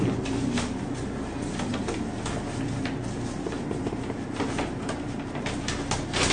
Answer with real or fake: real